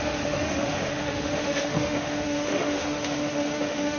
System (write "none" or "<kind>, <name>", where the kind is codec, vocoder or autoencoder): autoencoder, DAC-VAE